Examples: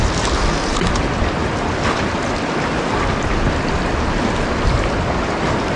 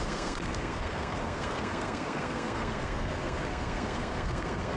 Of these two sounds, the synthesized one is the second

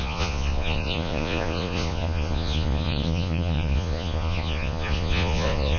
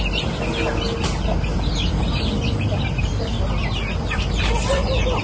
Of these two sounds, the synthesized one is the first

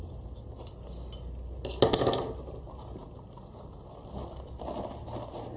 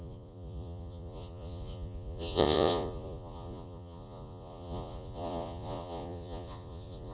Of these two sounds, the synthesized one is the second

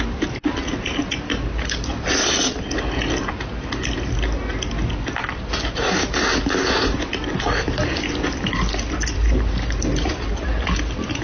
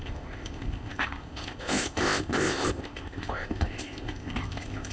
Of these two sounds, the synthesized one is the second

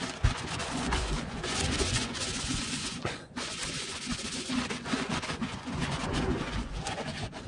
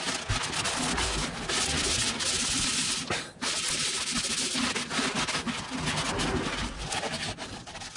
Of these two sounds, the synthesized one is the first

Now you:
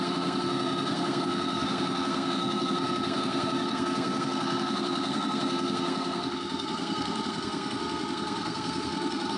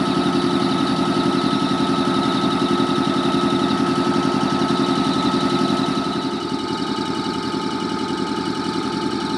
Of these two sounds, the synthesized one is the first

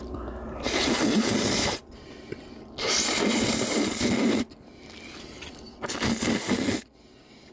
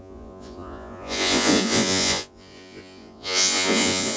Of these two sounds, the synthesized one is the second